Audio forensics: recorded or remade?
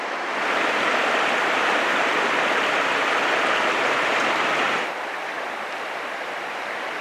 remade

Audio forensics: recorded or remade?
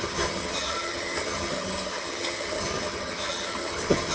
remade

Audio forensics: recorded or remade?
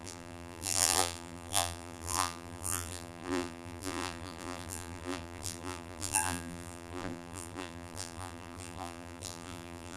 remade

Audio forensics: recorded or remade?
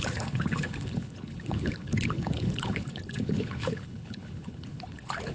remade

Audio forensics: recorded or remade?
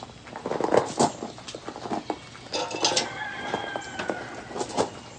recorded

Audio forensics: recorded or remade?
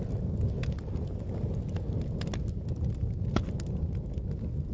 recorded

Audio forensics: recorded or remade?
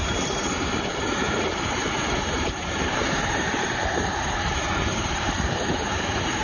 remade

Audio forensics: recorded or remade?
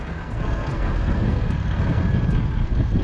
remade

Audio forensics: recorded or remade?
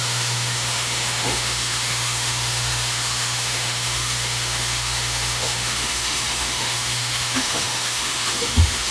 remade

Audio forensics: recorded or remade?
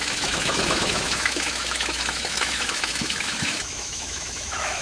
remade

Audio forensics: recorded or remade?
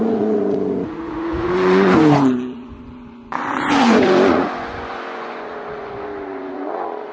remade